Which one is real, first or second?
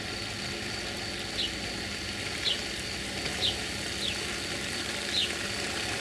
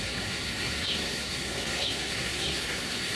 first